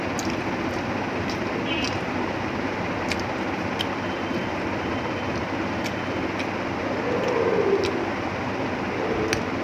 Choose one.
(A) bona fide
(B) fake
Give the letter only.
A